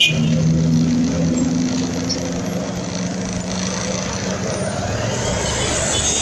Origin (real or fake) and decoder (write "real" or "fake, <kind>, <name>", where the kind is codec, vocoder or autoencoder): real